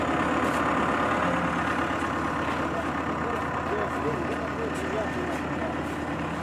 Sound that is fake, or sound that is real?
real